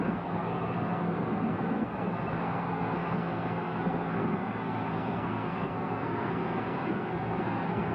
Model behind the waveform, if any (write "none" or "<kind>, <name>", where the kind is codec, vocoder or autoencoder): codec, SNAC